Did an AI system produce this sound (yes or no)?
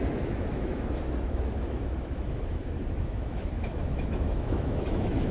yes